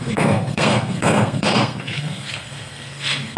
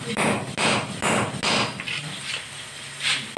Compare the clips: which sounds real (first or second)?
second